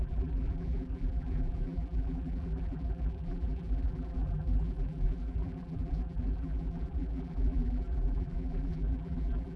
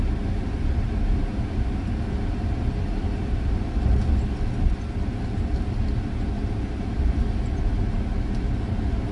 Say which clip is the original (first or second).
second